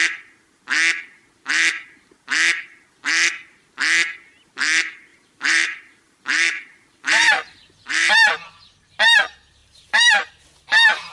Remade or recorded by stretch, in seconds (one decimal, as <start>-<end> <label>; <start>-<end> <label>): 0.0-5.1 recorded; 5.1-9.0 remade; 9.0-9.6 recorded; 9.6-10.3 remade; 10.3-11.1 recorded